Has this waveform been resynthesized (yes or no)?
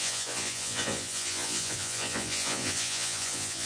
yes